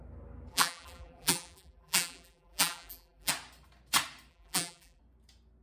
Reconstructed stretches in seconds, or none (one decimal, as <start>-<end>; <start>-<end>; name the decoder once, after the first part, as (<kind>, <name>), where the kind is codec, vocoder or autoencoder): 0.5-3.3 (vocoder, BigVGAN v2); 4.3-5.0

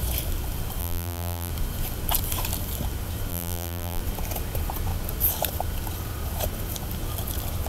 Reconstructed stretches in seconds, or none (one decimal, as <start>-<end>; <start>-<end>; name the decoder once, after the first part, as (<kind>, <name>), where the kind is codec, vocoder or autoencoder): 0.8-1.5 (vocoder, BigVGAN v2); 3.3-4.0

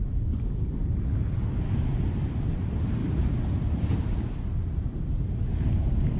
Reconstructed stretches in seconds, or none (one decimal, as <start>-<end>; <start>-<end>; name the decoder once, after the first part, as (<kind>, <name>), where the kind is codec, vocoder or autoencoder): 3.0-6.2 (vocoder, BigVGAN v2)

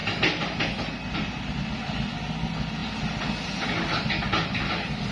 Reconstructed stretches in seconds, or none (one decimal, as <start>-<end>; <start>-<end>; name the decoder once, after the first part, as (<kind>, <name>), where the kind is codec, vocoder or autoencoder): none

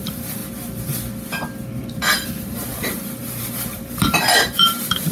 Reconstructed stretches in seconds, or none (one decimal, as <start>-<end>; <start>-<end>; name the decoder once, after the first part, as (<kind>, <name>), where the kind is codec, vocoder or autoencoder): 0.0-0.4 (vocoder, BigVGAN v2); 2.3-5.1

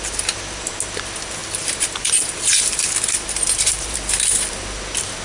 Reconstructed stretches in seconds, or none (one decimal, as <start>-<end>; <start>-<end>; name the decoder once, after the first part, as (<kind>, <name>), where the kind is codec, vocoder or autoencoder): 1.4-4.5 (vocoder, BigVGAN v2)

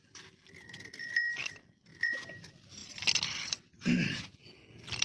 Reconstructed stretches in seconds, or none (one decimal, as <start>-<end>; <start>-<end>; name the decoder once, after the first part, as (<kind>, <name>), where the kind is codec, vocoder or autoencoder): none

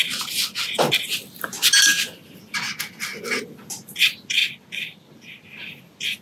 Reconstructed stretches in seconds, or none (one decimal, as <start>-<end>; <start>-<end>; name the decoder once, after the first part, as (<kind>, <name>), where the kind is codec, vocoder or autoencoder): none